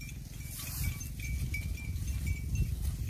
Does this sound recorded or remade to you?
recorded